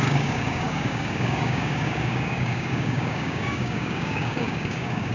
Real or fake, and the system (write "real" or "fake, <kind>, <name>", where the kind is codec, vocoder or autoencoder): fake, codec, DAC